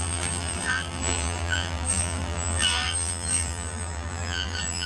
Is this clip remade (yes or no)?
yes